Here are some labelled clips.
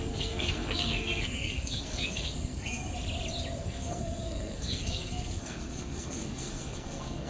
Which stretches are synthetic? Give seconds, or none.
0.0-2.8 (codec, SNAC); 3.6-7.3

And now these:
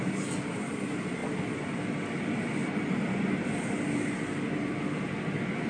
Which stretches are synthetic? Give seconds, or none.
none

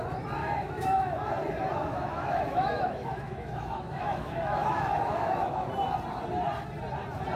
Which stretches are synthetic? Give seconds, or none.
0.4-1.3 (autoencoder, DAC-VAE); 1.8-5.7

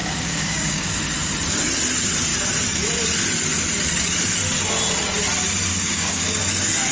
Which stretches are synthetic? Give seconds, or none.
0.0-0.9 (codec, DAC); 5.7-6.4

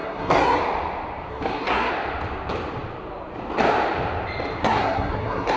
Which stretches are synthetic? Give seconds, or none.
0.0-0.6 (codec, SNAC); 1.3-1.9; 4.6-5.6

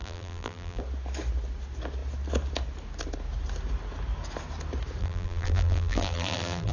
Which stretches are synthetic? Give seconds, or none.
0.0-0.8 (vocoder, BigVGAN v2); 5.0-6.7